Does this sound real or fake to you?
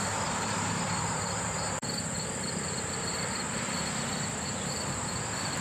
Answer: fake